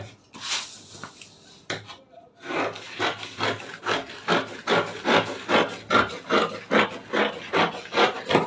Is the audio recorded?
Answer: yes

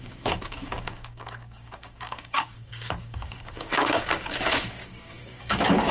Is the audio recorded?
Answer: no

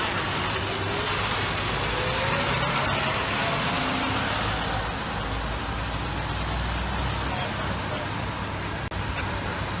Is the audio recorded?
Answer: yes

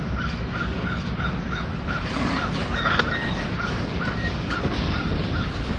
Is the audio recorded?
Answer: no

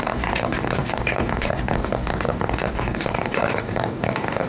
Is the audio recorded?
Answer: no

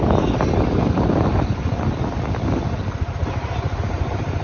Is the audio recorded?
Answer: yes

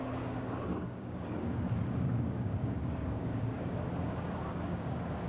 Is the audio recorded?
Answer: no